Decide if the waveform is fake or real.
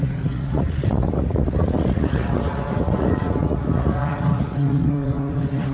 fake